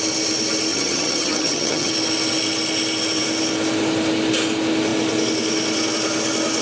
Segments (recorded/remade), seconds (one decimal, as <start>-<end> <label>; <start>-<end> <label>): 0.0-0.7 recorded; 0.7-1.9 remade; 1.9-6.6 recorded